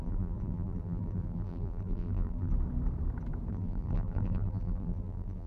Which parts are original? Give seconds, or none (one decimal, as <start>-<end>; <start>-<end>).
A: 2.5-3.5